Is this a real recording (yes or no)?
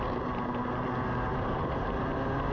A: yes